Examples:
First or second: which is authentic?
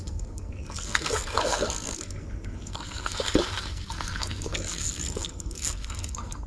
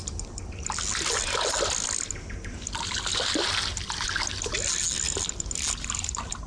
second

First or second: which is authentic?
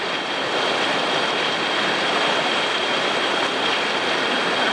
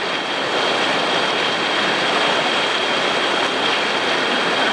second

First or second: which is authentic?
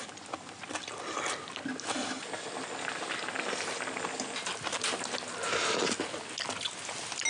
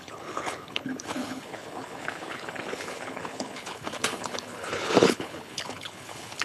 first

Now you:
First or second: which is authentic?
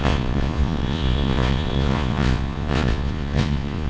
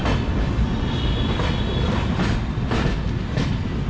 second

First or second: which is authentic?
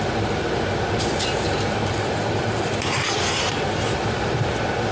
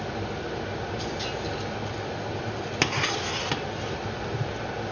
second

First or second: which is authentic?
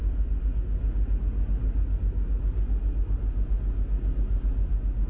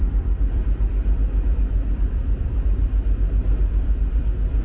first